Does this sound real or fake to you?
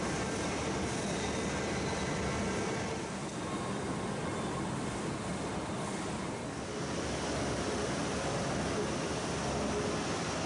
real